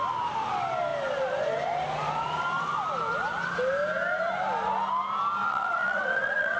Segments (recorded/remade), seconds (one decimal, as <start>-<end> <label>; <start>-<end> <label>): 0.0-5.4 recorded; 5.4-6.6 remade